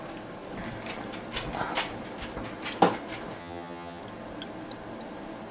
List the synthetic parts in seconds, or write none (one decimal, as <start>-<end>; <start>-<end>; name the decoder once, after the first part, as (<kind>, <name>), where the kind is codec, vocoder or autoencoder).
3.4-4.0 (vocoder, HiFi-GAN)